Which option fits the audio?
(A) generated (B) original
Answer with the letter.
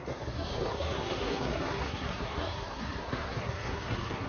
A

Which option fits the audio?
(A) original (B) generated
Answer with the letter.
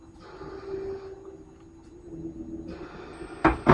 A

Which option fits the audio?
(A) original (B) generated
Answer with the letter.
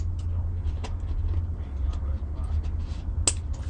A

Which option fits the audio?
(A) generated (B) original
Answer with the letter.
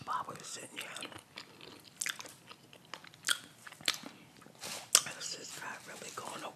B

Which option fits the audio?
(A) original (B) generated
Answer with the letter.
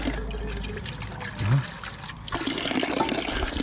A